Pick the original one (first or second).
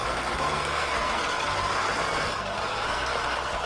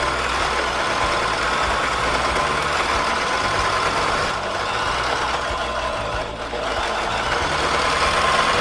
second